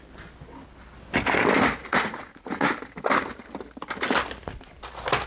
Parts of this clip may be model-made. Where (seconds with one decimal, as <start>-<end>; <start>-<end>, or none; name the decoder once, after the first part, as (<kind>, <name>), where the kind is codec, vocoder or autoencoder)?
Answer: 1.9-2.7 (vocoder, Vocos)